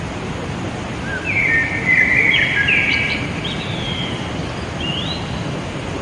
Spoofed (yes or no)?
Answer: no